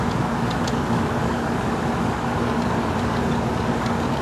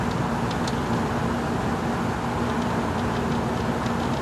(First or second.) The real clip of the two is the second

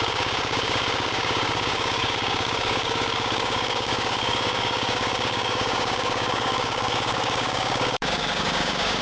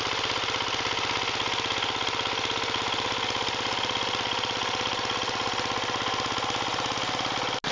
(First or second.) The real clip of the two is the second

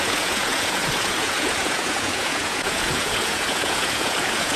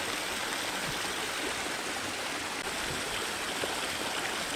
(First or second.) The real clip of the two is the second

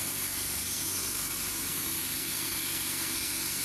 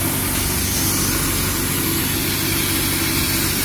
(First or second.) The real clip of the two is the second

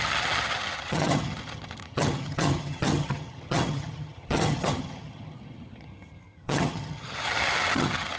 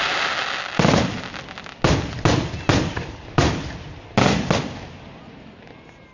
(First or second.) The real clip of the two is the second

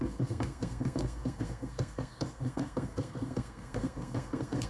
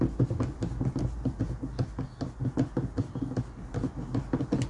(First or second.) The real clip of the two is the second